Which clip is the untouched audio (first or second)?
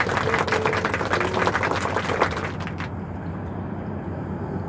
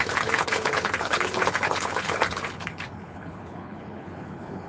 first